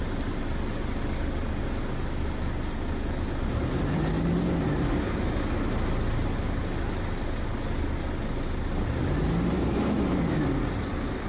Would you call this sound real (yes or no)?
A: yes